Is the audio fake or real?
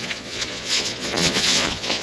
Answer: fake